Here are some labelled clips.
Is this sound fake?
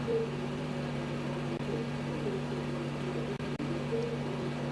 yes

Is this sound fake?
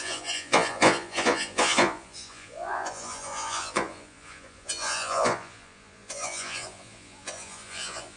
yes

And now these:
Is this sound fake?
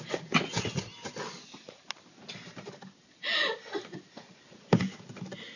no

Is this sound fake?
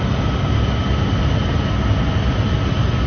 no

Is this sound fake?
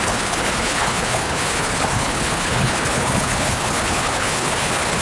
yes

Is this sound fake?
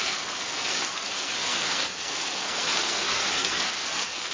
yes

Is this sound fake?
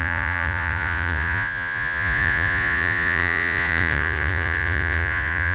yes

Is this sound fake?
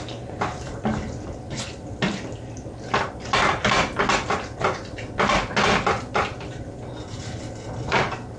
no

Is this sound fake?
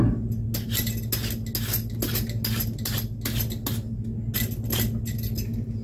no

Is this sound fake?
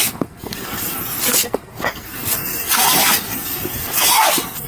yes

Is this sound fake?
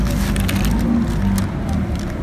no